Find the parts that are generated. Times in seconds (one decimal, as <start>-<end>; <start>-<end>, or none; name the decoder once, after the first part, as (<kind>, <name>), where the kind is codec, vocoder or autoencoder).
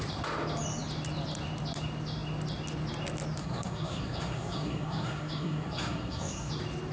3.4-6.5 (codec, SNAC)